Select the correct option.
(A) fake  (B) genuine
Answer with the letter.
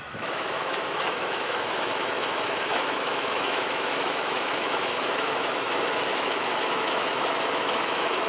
A